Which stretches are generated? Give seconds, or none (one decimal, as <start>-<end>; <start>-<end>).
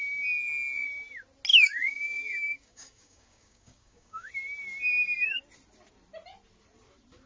1.5-4.3